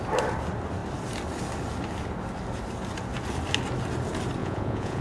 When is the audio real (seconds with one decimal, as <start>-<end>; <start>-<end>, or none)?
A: 0.0-4.4